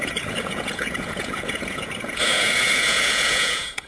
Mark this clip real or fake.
fake